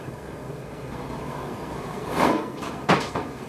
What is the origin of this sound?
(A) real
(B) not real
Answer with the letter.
B